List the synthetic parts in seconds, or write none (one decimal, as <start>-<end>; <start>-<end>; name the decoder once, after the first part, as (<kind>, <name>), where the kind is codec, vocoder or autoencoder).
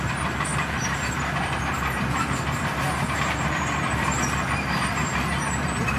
0.0-6.0 (vocoder, BigVGAN v2)